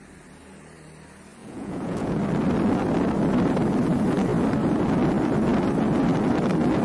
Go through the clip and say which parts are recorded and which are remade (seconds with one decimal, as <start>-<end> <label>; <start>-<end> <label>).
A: 0.0-1.4 recorded; 1.4-2.2 remade; 2.2-6.8 recorded

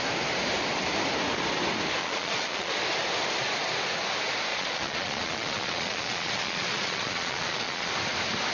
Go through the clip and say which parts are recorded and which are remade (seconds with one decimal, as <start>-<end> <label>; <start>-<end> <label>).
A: 0.0-2.0 recorded; 2.0-2.7 remade; 2.7-4.5 recorded; 4.5-7.9 remade; 7.9-8.5 recorded

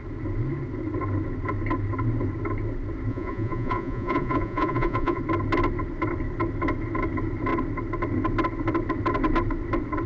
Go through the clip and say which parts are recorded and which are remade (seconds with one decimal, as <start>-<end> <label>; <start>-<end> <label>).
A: 0.0-3.1 recorded; 3.1-5.2 remade; 5.2-10.1 recorded